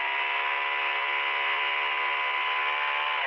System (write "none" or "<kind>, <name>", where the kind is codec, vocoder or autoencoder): none